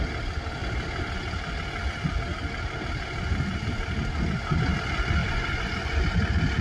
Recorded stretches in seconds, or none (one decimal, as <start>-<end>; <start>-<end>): 0.0-5.2; 6.0-6.6